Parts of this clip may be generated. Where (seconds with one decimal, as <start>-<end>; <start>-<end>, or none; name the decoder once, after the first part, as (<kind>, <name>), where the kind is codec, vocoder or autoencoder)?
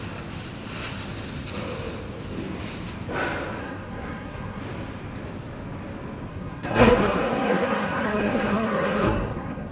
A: 3.6-4.6 (codec, SNAC); 6.3-9.7